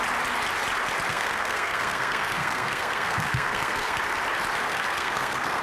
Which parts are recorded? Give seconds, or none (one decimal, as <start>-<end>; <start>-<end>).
0.0-1.1; 4.0-4.6